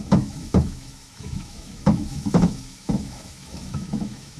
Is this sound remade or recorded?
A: remade